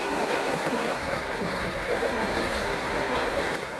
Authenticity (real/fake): fake